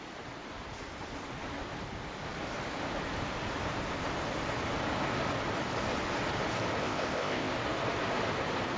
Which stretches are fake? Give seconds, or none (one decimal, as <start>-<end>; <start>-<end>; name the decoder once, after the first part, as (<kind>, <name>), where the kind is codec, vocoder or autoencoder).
6.8-7.5 (codec, ZipCodec)